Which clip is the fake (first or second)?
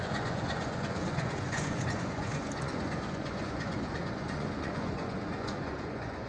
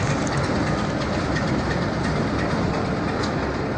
first